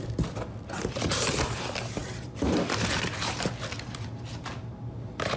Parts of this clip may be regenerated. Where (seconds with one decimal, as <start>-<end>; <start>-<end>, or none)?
none

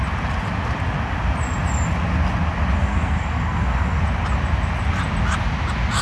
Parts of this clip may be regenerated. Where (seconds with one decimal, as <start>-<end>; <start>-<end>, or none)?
2.8-4.0

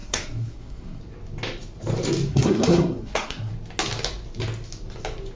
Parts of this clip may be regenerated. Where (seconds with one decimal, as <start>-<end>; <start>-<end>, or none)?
0.0-1.0; 2.3-3.5

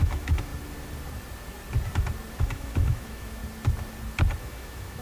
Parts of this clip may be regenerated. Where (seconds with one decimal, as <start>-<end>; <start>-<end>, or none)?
0.0-0.5; 2.4-3.4; 4.4-5.0